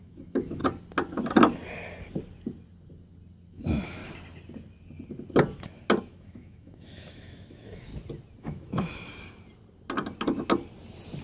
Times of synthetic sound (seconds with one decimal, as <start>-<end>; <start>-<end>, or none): 0.0-0.6; 3.5-4.0; 6.0-7.9; 8.4-9.1